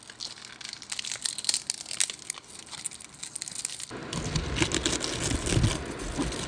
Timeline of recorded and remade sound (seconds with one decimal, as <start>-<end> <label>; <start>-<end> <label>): 0.0-6.5 recorded